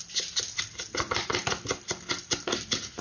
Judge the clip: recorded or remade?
recorded